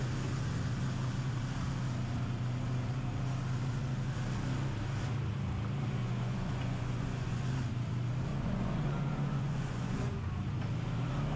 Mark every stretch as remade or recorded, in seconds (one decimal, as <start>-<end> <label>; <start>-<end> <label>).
0.0-6.0 recorded; 6.0-7.5 remade; 7.5-8.3 recorded; 8.3-10.3 remade; 10.3-11.4 recorded